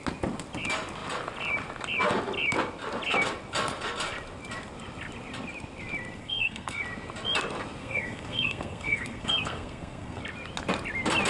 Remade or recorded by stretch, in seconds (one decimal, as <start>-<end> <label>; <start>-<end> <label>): 0.0-6.2 recorded; 6.2-6.8 remade; 6.8-7.8 recorded; 7.8-10.2 remade; 10.2-11.3 recorded